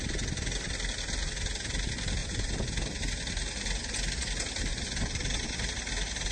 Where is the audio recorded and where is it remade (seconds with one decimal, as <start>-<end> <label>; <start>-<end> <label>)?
0.0-2.2 recorded; 2.2-3.0 remade; 3.0-4.7 recorded; 4.7-5.7 remade; 5.7-6.3 recorded